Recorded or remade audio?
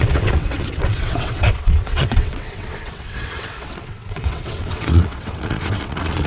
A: remade